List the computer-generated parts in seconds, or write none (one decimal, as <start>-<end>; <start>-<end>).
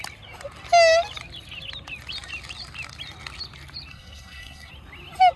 3.9-4.7